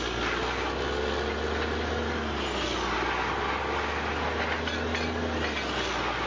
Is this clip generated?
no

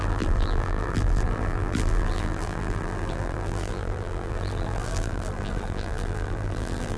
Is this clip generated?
yes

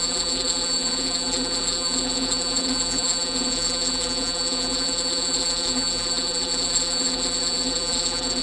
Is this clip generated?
yes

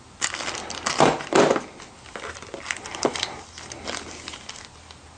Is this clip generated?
no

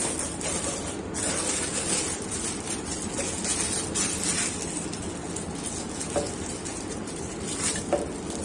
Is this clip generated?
no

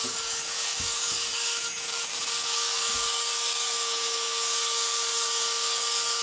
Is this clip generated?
yes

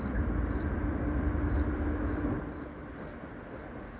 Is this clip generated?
no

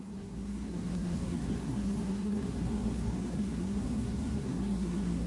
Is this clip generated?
yes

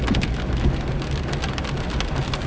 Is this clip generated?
no